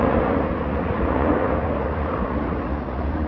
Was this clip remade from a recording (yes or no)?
yes